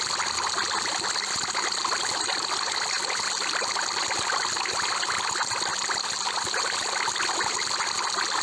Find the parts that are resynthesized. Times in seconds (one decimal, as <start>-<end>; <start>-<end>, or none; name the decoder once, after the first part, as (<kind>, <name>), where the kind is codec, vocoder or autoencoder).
none